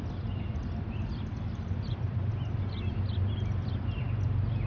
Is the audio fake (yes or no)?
yes